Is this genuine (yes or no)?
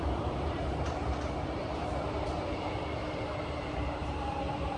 no